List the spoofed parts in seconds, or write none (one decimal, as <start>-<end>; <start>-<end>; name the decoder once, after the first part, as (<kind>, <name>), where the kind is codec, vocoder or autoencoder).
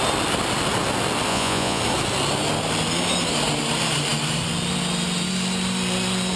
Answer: 1.3-1.8 (vocoder, Vocos)